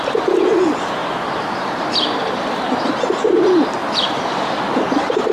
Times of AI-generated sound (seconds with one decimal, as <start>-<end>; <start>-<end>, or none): 1.0-2.9; 3.8-4.7